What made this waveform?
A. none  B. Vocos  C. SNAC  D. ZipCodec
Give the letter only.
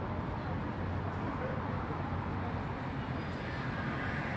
A